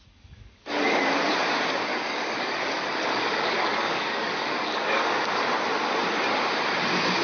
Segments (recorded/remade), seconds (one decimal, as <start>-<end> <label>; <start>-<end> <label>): 0.0-1.0 remade; 1.0-1.9 recorded; 1.9-5.1 remade; 5.1-7.2 recorded